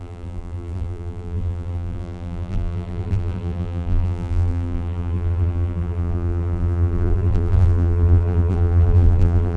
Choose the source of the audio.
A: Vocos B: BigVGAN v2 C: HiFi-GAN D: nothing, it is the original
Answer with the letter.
B